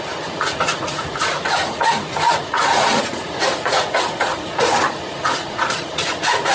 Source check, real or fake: fake